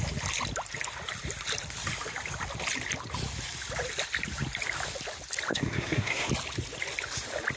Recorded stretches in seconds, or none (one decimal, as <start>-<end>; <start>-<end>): 0.0-5.5; 6.3-7.6